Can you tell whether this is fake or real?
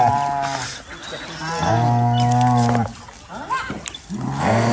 real